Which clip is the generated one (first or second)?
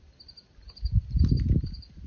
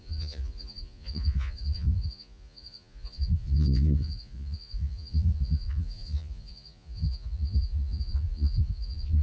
second